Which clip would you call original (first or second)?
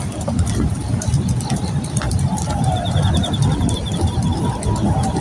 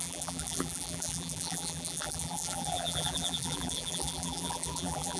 first